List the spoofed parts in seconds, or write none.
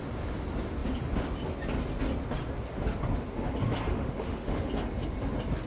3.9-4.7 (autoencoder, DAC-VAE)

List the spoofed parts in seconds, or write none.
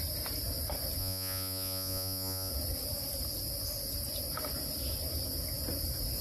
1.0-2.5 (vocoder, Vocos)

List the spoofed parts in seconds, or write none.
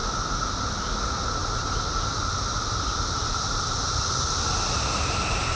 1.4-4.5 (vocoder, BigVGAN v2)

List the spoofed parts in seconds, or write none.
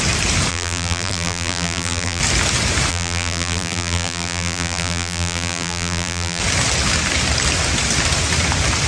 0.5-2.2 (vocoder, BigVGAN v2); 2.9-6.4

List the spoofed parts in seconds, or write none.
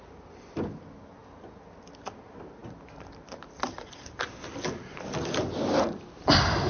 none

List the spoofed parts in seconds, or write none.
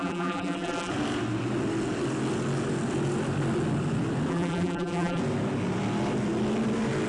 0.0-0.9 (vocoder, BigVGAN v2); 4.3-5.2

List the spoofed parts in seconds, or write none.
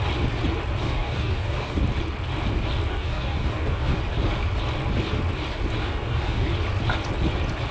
0.8-1.8 (codec, DAC); 2.9-4.0; 5.8-6.5